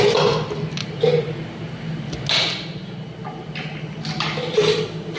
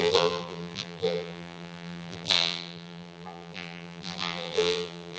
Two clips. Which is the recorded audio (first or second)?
first